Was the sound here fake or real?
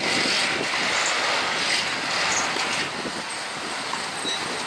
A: real